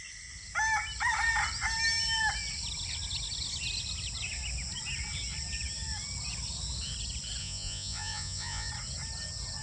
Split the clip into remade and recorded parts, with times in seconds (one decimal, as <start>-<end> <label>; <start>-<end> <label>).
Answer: 0.0-7.4 recorded; 7.4-8.7 remade; 8.7-9.6 recorded